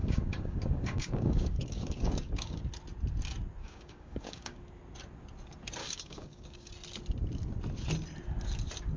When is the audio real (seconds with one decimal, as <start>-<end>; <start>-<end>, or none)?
2.6-3.6; 4.6-5.8; 6.7-9.0